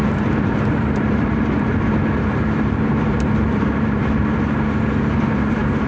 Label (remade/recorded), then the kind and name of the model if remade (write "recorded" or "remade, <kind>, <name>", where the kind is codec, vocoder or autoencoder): remade, vocoder, BigVGAN v2